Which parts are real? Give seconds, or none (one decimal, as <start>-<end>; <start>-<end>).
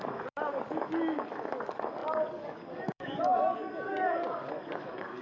none